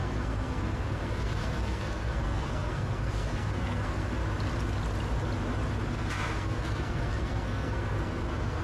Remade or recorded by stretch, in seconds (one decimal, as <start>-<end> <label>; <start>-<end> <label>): 0.0-4.2 remade; 4.2-5.9 recorded; 5.9-8.6 remade